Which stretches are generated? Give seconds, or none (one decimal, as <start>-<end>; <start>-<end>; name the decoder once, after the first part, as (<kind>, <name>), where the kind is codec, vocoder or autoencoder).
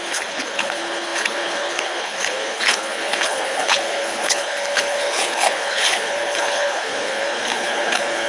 0.0-8.3 (codec, HILCodec)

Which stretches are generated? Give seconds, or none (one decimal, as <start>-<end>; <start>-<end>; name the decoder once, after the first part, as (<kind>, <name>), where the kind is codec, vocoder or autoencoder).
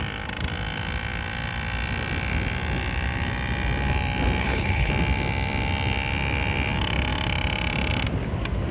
4.4-4.9 (codec, HILCodec)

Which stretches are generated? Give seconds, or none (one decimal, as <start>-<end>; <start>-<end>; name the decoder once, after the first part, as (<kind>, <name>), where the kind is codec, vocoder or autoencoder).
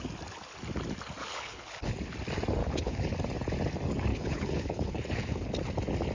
1.2-1.9 (codec, HILCodec); 2.6-3.1; 4.1-5.5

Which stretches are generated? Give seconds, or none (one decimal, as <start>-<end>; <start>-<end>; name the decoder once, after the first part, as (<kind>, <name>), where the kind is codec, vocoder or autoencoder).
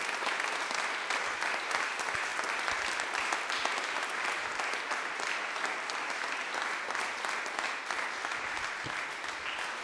none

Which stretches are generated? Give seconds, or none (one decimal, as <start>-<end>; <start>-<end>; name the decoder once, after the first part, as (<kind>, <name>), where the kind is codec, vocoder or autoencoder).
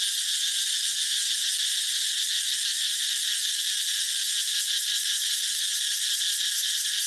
none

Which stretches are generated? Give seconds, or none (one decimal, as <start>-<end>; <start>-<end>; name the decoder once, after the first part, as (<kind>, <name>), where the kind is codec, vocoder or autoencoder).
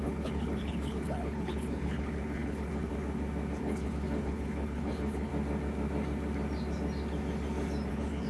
0.0-2.9 (codec, HILCodec); 3.6-5.3; 7.9-8.3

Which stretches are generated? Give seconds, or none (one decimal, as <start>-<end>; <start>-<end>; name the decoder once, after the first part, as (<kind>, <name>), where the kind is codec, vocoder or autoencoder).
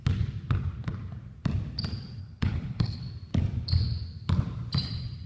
2.2-3.0 (codec, HILCodec)